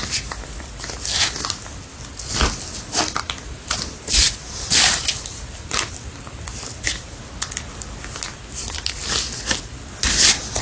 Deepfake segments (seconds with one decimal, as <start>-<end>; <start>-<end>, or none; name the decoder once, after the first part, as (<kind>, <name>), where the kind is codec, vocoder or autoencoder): none